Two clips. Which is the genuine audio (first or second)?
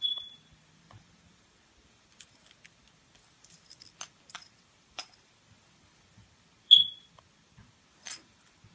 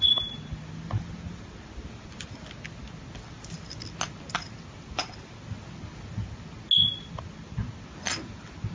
second